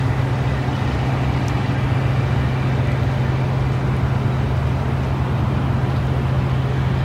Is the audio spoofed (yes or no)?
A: no